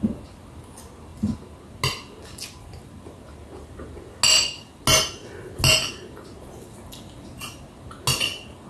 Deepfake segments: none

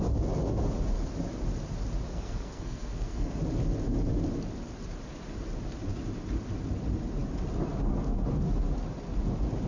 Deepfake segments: 2.1-3.4 (codec, SNAC)

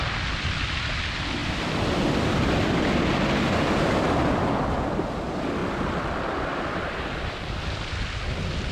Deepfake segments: none

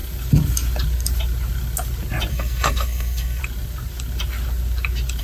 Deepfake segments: 2.3-3.4 (codec, SNAC)

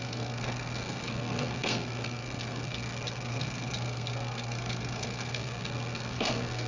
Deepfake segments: 0.0-6.7 (codec, SNAC)